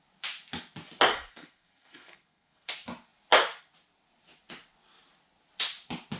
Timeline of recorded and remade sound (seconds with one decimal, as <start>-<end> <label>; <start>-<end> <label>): 0.0-1.1 recorded; 1.1-2.7 remade; 2.7-6.2 recorded